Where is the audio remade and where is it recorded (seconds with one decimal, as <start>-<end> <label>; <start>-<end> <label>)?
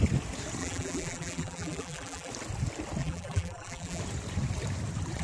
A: 0.0-0.6 recorded; 0.6-2.3 remade; 2.3-3.0 recorded; 3.0-4.0 remade; 4.0-5.2 recorded